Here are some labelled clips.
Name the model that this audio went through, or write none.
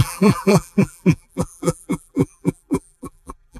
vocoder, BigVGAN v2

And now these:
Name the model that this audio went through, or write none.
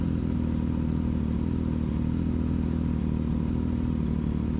none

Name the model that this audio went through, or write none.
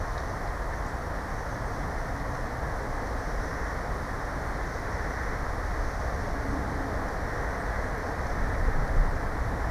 none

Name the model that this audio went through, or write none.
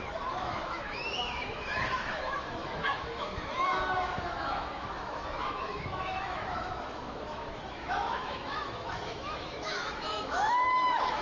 autoencoder, DAC-VAE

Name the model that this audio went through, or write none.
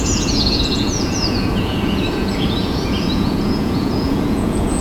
vocoder, Vocos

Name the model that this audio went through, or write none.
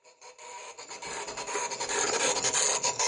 none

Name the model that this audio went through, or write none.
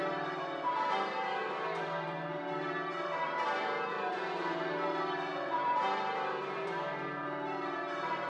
vocoder, BigVGAN v2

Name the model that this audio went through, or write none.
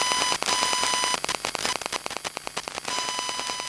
none